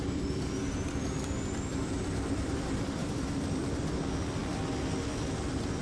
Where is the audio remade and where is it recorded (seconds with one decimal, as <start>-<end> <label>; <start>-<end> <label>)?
0.0-1.7 recorded; 1.7-3.1 remade; 3.1-5.8 recorded